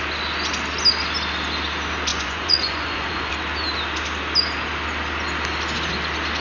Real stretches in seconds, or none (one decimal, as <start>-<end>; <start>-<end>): 0.0-2.1; 3.3-6.4